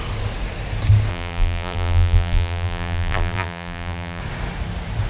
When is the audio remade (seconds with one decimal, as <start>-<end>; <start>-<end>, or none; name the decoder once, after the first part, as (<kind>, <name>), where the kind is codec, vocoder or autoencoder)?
1.1-4.2 (vocoder, BigVGAN v2)